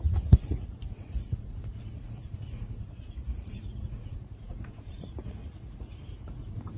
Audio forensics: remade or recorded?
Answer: remade